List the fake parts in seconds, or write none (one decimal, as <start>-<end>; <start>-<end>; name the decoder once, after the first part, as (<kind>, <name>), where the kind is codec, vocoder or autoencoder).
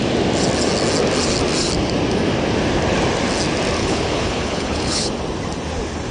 3.8-5.1 (codec, HILCodec)